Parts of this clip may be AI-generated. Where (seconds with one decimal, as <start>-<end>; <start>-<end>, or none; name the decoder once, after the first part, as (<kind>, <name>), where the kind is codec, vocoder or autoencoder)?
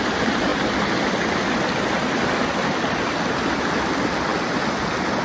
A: none